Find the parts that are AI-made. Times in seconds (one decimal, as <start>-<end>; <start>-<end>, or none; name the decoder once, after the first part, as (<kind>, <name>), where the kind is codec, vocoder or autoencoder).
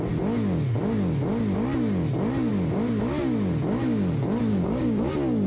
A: 4.5-5.1 (codec, DAC)